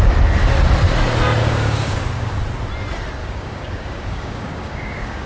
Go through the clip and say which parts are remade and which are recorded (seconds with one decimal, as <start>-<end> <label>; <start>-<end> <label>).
0.0-1.4 recorded; 1.4-2.4 remade; 2.4-3.2 recorded; 3.2-5.3 remade